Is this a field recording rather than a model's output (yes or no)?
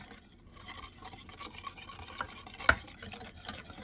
yes